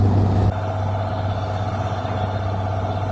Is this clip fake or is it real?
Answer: real